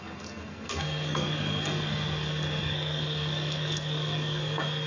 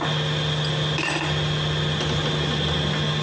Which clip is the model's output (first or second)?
first